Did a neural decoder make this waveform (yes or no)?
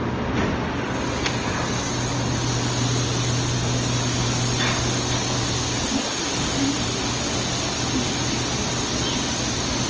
no